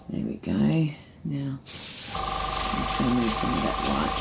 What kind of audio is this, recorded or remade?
recorded